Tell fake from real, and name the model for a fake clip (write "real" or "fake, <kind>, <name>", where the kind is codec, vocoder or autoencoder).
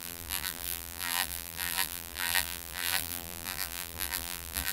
fake, vocoder, BigVGAN v2